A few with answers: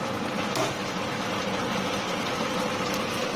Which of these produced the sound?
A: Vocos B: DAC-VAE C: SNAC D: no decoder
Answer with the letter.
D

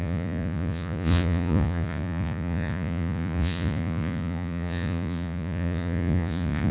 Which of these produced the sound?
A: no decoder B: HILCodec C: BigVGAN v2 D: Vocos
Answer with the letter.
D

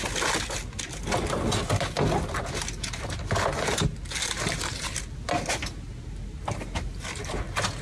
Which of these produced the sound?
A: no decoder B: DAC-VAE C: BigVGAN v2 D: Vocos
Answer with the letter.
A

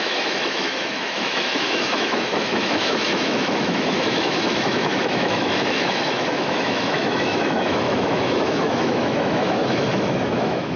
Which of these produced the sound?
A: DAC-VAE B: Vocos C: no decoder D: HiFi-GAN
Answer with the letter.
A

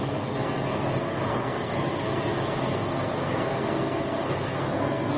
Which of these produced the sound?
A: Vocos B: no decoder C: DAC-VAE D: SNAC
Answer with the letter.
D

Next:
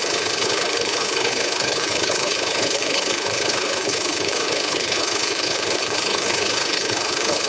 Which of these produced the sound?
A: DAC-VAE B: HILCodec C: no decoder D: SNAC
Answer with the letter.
B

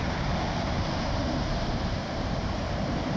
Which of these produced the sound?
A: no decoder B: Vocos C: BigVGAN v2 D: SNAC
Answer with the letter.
C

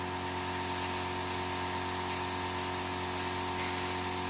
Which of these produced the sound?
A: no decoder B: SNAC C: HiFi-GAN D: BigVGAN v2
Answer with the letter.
A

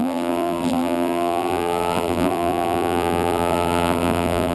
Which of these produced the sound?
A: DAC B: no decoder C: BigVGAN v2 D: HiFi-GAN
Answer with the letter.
C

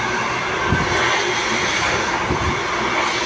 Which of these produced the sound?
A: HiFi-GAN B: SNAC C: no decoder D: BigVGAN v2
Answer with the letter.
C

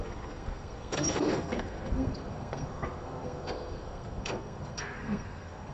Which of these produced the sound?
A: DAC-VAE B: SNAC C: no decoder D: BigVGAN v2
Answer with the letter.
B